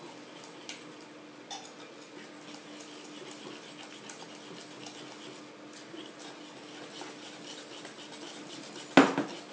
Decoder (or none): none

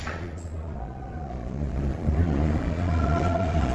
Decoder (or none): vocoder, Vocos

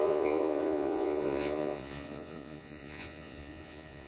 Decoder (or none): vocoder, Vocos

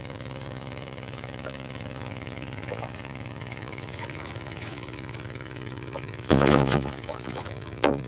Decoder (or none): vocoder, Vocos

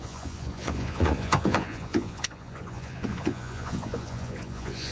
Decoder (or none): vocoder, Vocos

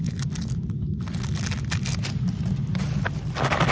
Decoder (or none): none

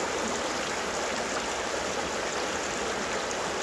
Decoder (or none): none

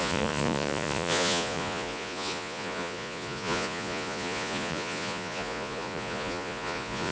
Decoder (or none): vocoder, Vocos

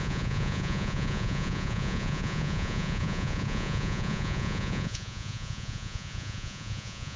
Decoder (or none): vocoder, Vocos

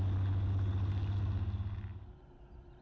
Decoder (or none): none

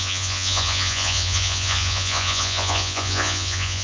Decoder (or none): vocoder, Vocos